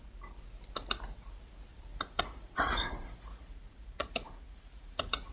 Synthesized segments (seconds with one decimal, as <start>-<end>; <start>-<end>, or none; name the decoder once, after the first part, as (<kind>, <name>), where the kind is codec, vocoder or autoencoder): 1.9-5.3 (vocoder, Vocos)